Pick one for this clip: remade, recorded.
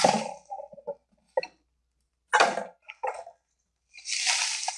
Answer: recorded